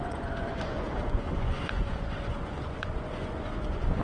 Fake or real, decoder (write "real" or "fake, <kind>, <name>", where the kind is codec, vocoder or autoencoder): fake, vocoder, Vocos